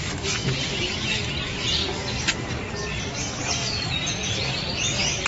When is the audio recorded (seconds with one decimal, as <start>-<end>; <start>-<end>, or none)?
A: 0.0-3.6; 4.6-5.3